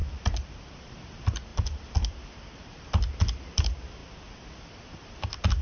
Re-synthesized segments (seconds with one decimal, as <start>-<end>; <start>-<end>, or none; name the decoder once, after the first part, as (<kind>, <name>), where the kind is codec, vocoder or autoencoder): none